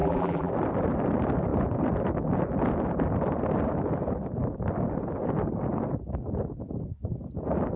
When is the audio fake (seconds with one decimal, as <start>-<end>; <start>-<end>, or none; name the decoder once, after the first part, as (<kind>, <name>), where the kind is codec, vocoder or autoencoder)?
0.0-0.5 (vocoder, BigVGAN v2)